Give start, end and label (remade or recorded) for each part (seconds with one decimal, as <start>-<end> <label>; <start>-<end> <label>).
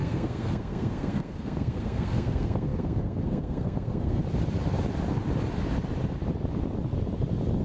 0.0-4.2 remade; 4.2-7.6 recorded